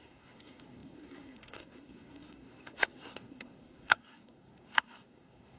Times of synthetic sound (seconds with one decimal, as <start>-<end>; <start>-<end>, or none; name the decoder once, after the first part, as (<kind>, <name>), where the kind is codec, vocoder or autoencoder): 0.0-5.6 (codec, SNAC)